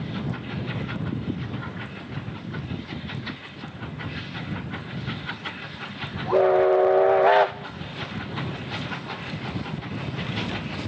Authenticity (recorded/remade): recorded